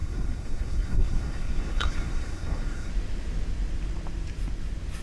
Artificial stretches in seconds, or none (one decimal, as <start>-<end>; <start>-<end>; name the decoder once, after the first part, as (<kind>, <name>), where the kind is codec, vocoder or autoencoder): 0.0-2.9 (codec, SNAC)